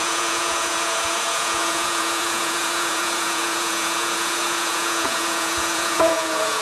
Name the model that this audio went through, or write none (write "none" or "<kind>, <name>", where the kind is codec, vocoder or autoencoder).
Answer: vocoder, Vocos